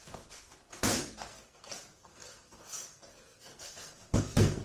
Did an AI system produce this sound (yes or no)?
yes